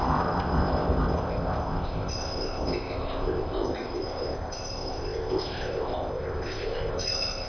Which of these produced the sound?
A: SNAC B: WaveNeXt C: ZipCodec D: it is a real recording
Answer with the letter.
C